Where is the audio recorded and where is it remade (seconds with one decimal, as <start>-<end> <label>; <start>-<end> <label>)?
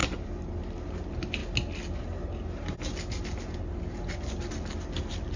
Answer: 0.0-1.4 remade; 1.4-4.5 recorded; 4.5-5.4 remade